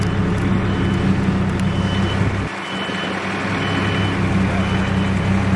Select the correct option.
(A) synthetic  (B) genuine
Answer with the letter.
B